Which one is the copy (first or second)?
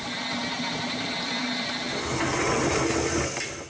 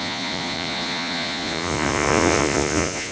second